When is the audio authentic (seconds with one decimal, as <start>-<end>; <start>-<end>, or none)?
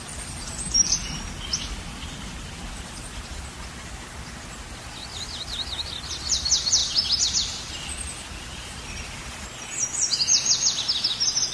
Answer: 0.0-11.5